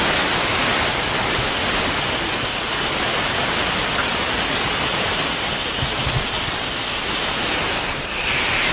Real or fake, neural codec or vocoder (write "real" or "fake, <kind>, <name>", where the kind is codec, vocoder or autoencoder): real